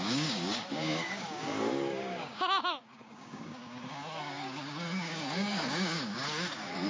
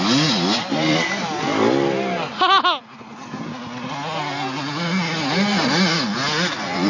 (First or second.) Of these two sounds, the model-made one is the first